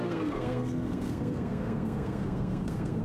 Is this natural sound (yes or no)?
no